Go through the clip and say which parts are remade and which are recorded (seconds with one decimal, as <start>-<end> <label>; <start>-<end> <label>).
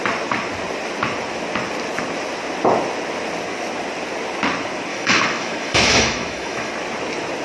0.0-4.9 recorded; 4.9-6.7 remade; 6.7-7.4 recorded